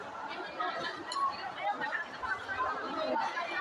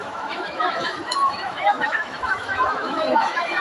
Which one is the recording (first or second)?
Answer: first